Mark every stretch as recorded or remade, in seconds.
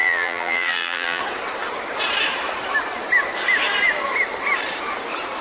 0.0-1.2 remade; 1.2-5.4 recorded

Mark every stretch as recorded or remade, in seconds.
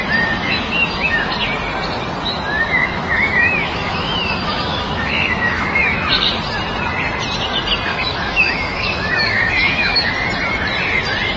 0.0-0.4 recorded; 0.4-1.3 remade; 1.3-2.5 recorded; 2.5-6.1 remade; 6.1-7.9 recorded; 7.9-10.1 remade; 10.1-11.4 recorded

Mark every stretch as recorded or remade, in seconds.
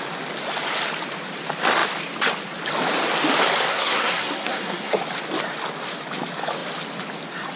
0.0-3.7 recorded; 3.7-5.0 remade; 5.0-7.6 recorded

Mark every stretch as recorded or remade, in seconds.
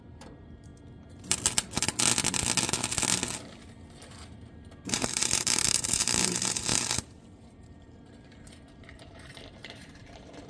0.0-0.7 remade; 0.7-4.3 recorded; 4.3-10.5 remade